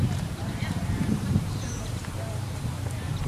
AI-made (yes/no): yes